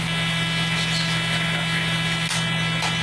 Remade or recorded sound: recorded